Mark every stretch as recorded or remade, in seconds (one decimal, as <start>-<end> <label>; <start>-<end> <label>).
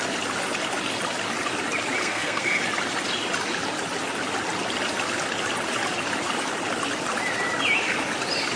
0.0-2.0 recorded; 2.0-2.6 remade; 2.6-8.6 recorded